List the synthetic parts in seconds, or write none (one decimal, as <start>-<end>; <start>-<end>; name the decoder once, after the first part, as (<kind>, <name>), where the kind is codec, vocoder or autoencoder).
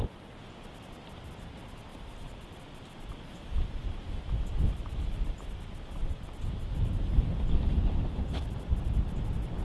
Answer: 1.9-2.4 (vocoder, BigVGAN v2); 3.1-4.9